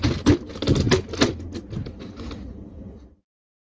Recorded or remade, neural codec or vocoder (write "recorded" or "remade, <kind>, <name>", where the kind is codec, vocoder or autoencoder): recorded